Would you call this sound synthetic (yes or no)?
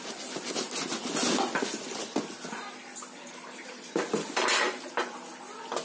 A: no